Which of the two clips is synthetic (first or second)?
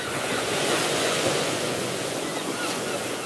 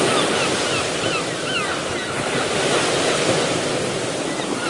first